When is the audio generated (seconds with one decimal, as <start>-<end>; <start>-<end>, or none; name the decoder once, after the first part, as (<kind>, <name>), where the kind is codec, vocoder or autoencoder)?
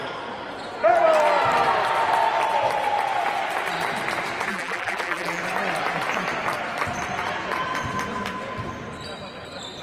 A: 4.5-5.4 (vocoder, BigVGAN v2)